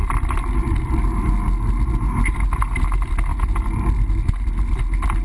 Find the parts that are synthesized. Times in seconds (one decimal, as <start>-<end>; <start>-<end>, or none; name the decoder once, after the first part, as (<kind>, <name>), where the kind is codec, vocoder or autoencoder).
0.0-1.3 (vocoder, BigVGAN v2); 3.3-4.1